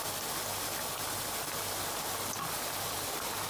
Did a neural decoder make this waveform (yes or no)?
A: no